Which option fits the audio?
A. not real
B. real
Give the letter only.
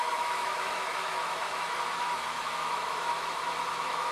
A